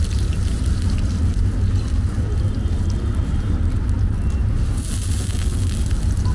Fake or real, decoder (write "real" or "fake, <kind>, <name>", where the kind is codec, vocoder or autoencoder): real